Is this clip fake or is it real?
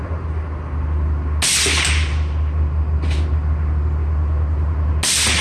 real